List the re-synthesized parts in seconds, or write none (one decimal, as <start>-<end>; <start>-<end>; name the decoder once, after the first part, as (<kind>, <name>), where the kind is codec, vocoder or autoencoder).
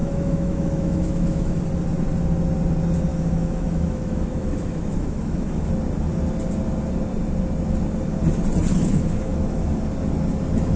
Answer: 0.0-1.6 (autoencoder, DAC-VAE); 3.1-5.7; 8.7-9.7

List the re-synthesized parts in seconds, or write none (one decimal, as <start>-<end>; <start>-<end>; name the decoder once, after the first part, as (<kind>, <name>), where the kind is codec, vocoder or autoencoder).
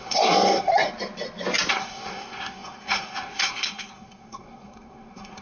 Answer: 0.0-0.7 (codec, SNAC); 1.7-5.4